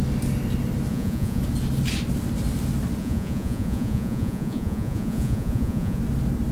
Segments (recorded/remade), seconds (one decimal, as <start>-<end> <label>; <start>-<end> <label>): 0.0-0.9 recorded; 0.9-1.4 remade; 1.4-3.0 recorded; 3.0-6.0 remade; 6.0-6.5 recorded

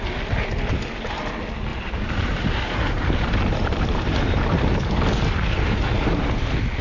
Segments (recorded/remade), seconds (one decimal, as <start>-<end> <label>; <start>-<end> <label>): 0.0-1.7 recorded; 1.7-4.9 remade; 4.9-6.8 recorded

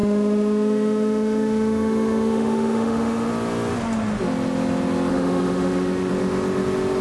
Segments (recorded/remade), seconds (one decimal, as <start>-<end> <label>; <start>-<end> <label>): 0.0-3.3 remade; 3.3-5.1 recorded; 5.1-6.1 remade; 6.1-7.0 recorded

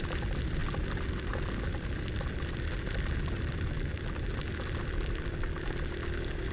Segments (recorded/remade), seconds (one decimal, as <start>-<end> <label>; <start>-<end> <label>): 0.0-6.5 recorded

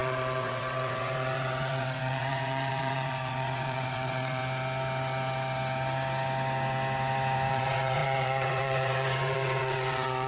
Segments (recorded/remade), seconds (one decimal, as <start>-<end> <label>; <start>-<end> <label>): 0.0-4.4 remade; 4.4-7.5 recorded; 7.5-10.3 remade